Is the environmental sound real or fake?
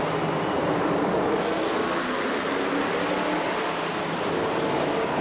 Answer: real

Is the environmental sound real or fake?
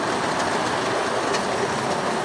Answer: real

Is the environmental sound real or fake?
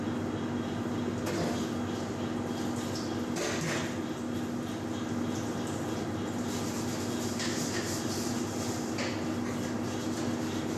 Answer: real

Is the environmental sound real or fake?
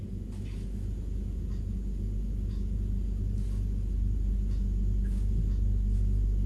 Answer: real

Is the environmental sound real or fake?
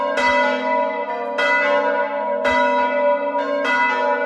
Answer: real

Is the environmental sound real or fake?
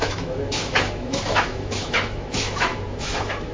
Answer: fake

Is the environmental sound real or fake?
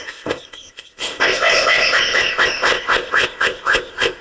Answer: fake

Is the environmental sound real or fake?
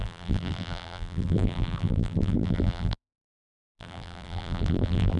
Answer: fake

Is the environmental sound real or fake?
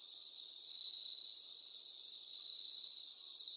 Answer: fake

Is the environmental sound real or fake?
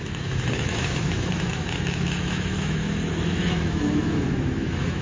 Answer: fake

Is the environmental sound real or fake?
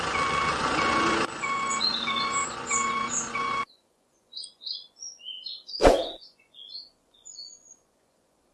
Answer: fake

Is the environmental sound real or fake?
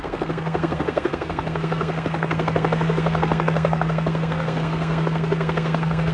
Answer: fake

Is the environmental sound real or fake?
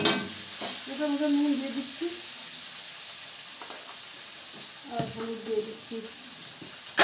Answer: real